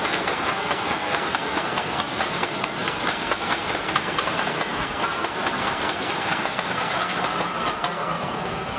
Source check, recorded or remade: remade